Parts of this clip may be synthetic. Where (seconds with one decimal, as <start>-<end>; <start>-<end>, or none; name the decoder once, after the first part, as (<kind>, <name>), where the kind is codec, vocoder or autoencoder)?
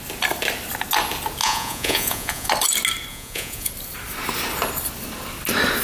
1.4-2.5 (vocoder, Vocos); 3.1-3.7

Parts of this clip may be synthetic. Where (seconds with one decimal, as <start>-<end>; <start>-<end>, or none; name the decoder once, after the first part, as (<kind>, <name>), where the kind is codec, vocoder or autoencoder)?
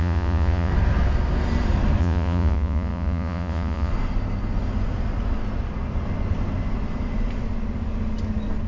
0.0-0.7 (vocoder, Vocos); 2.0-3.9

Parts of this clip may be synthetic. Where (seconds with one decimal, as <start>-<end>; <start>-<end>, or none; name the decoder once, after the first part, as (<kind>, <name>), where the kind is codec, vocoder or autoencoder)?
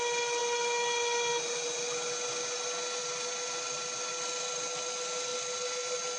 none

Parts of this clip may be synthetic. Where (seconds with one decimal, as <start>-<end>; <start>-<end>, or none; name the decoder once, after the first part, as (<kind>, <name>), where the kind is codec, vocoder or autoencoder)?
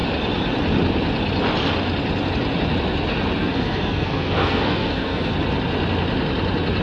3.4-5.3 (codec, SNAC)